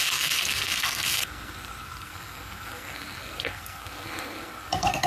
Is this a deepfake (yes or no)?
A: yes